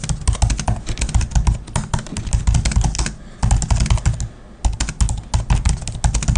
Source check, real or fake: real